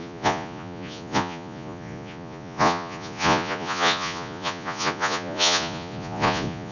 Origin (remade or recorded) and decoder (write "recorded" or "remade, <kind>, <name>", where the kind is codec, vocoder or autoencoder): remade, vocoder, Vocos